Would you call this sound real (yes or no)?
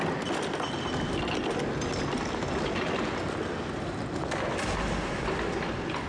yes